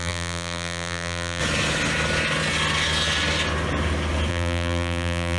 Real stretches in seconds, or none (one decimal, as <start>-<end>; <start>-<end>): 1.4-4.3